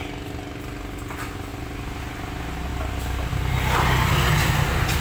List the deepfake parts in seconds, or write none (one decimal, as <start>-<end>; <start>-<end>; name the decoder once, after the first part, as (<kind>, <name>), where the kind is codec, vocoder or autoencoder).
none